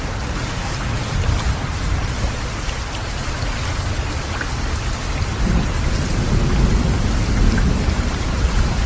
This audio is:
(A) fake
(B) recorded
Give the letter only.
B